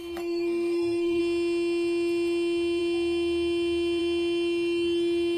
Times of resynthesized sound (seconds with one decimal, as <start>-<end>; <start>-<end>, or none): 0.0-1.2